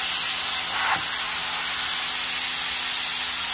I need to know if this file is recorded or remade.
recorded